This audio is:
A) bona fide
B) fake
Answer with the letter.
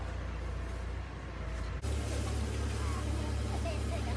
A